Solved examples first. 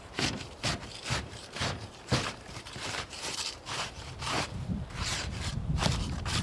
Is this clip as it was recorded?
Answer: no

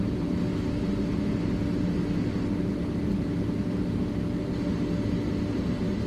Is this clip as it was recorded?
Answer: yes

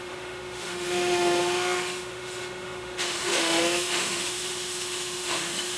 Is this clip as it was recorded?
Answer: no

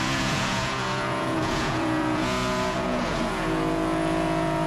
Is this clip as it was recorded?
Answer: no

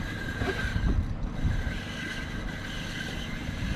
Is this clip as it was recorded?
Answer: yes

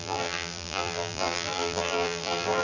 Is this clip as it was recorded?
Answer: no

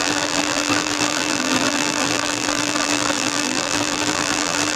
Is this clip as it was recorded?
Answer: no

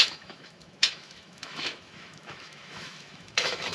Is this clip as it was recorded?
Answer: no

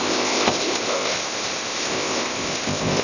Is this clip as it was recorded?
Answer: no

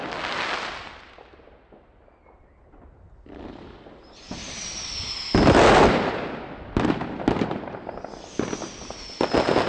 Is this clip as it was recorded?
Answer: yes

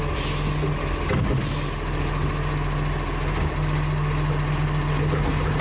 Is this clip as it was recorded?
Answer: yes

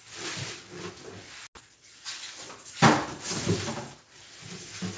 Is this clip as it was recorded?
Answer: yes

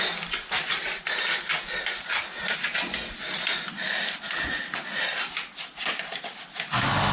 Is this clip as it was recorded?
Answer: yes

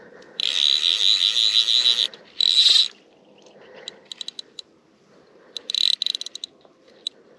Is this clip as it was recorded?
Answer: yes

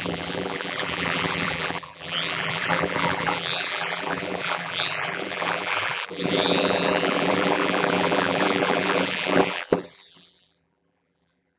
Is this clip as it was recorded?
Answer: no